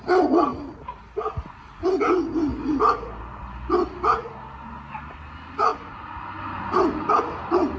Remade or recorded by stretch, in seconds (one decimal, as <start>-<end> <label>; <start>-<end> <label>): 0.0-0.5 recorded; 0.5-1.0 remade; 1.0-7.8 recorded